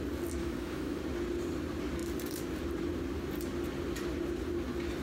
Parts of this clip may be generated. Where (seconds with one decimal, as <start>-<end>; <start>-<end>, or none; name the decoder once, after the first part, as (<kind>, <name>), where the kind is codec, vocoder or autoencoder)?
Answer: 0.4-1.0 (autoencoder, DAC-VAE)